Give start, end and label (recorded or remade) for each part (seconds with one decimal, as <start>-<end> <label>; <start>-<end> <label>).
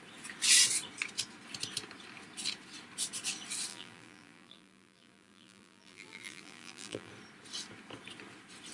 0.0-3.7 recorded; 3.7-7.1 remade; 7.1-8.7 recorded